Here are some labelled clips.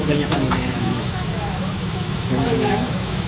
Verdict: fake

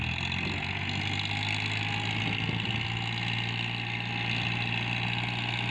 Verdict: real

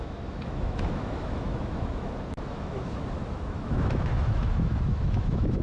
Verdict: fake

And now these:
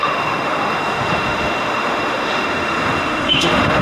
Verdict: fake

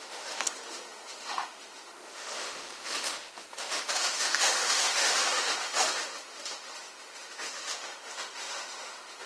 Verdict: fake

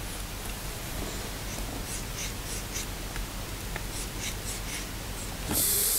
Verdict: real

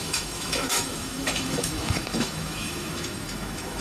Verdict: fake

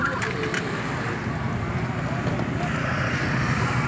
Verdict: real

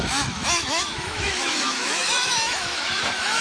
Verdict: fake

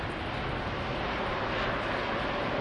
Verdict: real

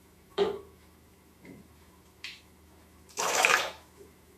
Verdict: fake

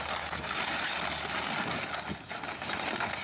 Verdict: real